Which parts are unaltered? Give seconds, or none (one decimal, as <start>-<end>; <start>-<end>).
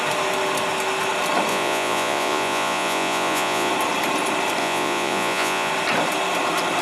0.0-1.5; 3.7-4.6; 5.7-6.8